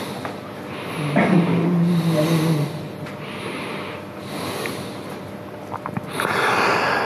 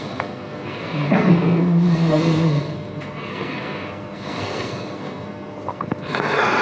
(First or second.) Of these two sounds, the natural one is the first